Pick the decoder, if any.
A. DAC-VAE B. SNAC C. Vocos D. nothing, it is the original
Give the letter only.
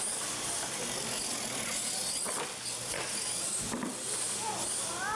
D